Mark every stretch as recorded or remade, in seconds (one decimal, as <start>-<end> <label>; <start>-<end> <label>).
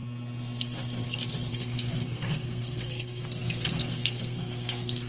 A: 0.0-1.5 recorded; 1.5-5.1 remade